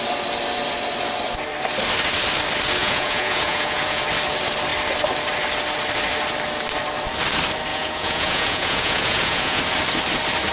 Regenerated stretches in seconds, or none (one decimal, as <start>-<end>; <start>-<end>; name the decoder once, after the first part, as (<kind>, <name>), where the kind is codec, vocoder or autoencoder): 2.8-4.0 (vocoder, Vocos); 7.7-9.6